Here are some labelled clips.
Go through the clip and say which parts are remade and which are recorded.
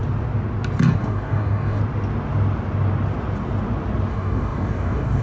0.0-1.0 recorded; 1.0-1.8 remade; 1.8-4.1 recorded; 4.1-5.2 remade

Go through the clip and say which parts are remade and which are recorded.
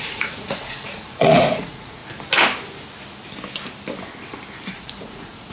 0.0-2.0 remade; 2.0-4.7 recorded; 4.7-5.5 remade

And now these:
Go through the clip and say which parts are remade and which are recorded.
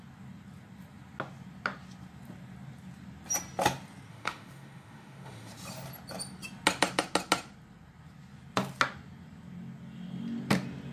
0.0-4.1 recorded; 4.1-5.5 remade; 5.5-10.9 recorded